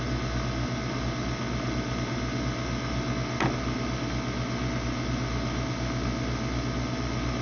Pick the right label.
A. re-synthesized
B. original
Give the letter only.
B